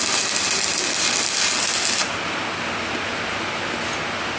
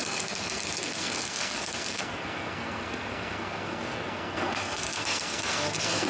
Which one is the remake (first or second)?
second